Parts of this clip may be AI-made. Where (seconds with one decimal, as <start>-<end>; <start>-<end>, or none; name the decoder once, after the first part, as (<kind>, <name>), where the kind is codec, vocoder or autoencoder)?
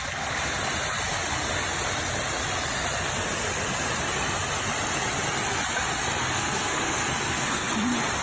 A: 6.2-7.7 (codec, SNAC)